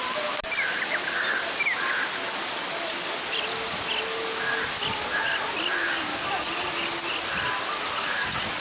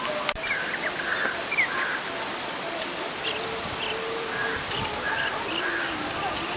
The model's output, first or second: second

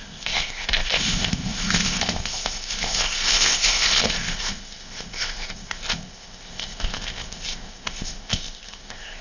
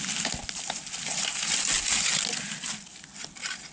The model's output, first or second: first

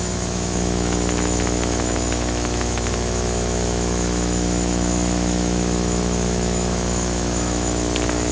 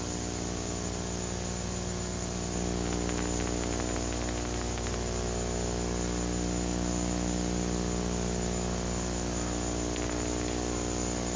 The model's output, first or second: first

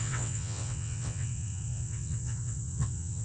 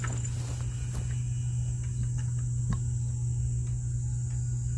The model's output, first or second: first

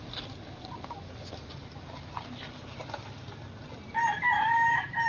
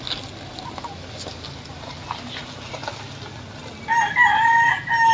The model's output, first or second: first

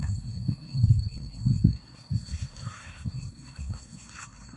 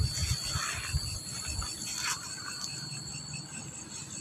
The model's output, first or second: first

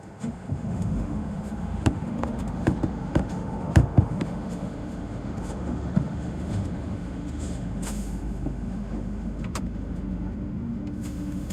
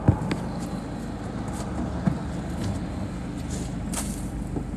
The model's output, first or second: first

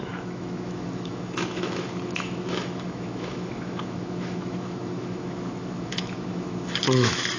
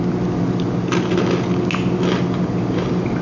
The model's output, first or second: first